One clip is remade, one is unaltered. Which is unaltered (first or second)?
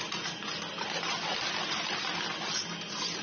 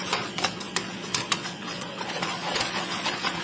first